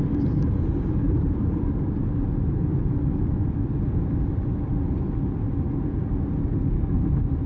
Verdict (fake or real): real